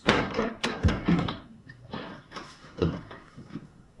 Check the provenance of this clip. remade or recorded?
remade